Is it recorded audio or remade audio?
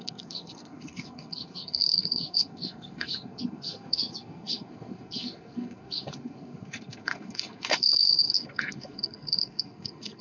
remade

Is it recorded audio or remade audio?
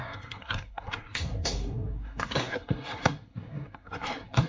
remade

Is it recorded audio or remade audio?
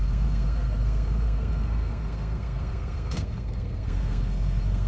remade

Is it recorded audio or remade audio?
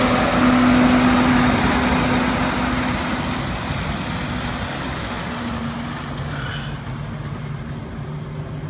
recorded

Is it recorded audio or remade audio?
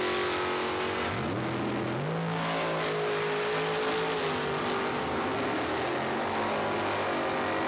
recorded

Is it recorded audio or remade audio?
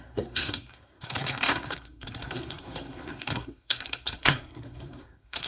remade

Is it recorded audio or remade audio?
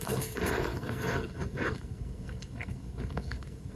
remade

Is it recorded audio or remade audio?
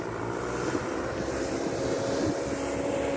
recorded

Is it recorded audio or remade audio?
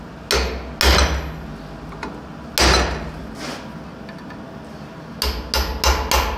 recorded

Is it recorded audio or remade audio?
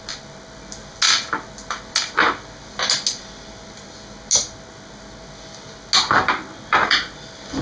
recorded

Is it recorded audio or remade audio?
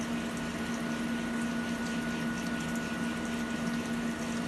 recorded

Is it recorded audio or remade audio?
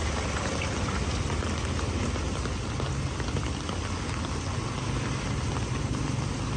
recorded